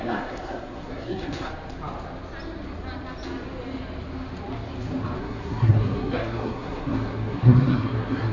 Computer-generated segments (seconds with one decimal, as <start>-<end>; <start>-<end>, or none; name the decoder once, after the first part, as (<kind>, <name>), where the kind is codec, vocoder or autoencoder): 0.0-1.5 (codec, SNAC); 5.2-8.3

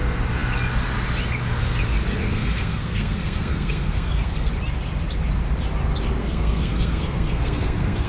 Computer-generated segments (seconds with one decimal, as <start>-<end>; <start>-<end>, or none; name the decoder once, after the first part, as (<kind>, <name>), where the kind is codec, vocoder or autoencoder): 2.2-4.5 (codec, SNAC); 6.2-8.1

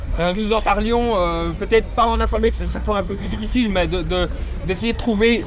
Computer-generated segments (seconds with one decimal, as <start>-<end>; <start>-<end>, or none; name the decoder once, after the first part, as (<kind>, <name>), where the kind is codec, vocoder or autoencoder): 0.0-0.7 (codec, SNAC); 2.0-3.7; 4.8-5.5

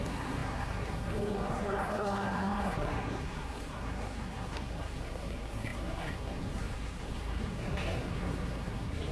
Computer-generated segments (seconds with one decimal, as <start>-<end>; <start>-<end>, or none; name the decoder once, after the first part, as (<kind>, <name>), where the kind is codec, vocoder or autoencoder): 0.0-9.1 (codec, SNAC)

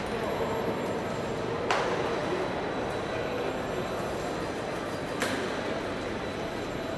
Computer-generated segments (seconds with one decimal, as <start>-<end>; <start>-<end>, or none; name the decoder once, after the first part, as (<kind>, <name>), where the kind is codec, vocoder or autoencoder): none

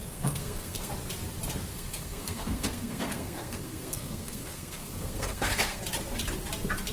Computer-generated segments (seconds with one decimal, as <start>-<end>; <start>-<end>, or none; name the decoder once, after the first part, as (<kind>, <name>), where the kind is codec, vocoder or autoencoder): 0.0-0.9 (codec, SNAC); 1.7-5.8

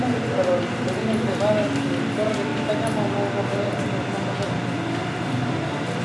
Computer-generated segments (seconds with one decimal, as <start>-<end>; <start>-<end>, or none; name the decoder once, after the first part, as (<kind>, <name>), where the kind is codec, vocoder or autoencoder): none

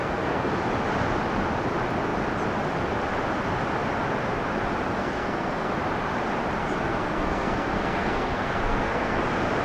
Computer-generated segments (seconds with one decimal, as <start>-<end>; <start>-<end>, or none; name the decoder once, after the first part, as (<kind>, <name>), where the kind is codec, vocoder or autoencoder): 0.0-0.5 (codec, SNAC); 4.9-5.7; 6.6-9.2